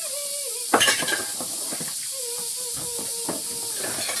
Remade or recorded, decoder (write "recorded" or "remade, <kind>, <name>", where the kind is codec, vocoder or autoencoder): recorded